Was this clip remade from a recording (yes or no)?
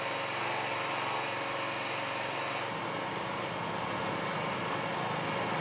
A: no